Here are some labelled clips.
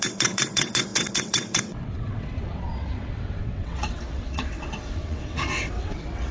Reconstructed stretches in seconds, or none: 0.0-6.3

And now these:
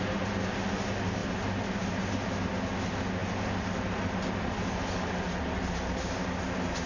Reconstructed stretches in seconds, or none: none

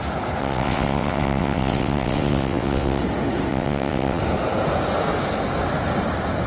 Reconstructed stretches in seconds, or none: 0.4-3.0; 3.5-4.2

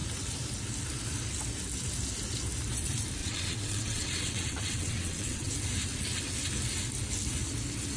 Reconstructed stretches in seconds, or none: 3.2-5.5

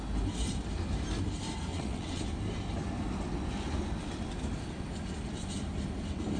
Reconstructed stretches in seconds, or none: 1.7-2.2